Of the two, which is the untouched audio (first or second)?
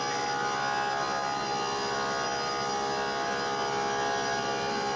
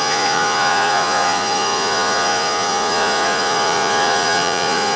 first